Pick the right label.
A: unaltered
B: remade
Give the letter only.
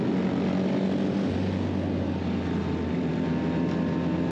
A